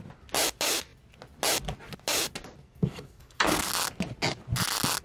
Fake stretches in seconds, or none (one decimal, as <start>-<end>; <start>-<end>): 2.6-3.7

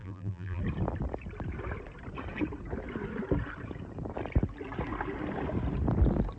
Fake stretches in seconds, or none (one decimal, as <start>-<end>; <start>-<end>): 0.0-0.6

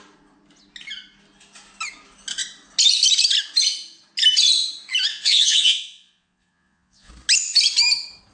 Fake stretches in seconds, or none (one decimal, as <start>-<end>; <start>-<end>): 5.1-7.1

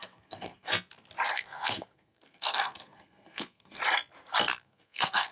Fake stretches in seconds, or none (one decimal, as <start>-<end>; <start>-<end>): 0.0-0.7; 1.3-3.8; 4.5-5.3

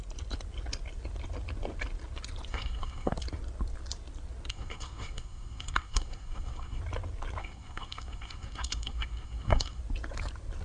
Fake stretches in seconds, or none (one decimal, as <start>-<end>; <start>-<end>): 2.5-3.1; 4.5-6.8; 7.4-9.8

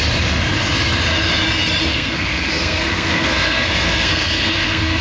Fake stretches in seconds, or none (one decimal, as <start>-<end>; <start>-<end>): 1.9-5.0

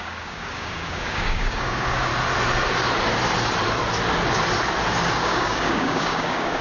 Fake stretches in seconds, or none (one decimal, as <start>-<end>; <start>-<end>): 0.0-2.1; 5.1-6.6